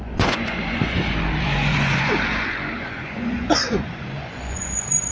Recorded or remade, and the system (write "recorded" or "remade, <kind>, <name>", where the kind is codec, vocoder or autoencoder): remade, vocoder, Vocos